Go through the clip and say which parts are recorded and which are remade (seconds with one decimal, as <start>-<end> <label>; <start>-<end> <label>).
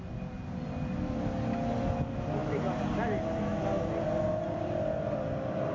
0.0-5.7 recorded